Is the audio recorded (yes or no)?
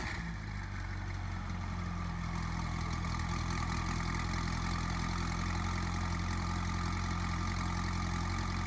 yes